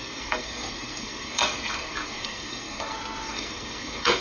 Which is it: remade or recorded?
remade